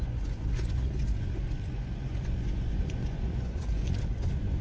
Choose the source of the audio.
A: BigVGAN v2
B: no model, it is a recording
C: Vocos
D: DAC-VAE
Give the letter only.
C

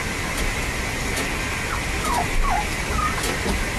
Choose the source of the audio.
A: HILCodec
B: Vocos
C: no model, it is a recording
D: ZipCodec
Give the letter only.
C